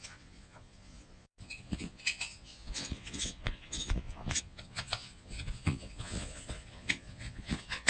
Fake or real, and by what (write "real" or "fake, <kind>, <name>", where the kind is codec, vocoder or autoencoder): fake, vocoder, Vocos